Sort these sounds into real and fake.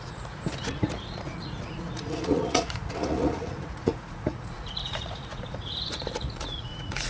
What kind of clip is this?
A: fake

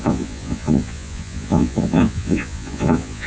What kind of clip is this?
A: fake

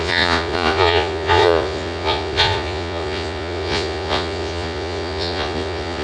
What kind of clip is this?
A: fake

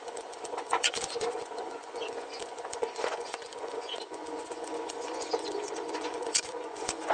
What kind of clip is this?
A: fake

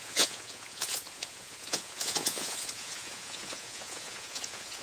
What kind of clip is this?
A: fake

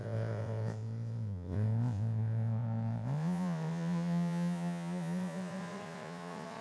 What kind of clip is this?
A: fake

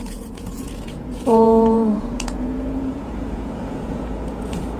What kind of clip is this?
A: fake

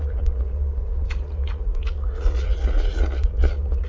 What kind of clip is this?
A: fake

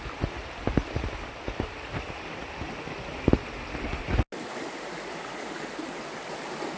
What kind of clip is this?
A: real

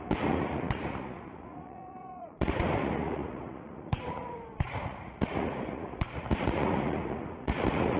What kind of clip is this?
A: fake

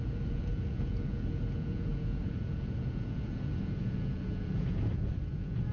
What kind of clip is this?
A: fake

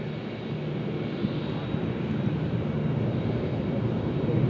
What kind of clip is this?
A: real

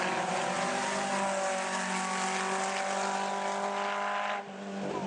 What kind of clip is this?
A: real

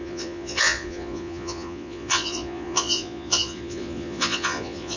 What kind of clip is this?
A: fake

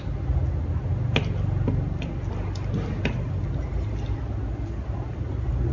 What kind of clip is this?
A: real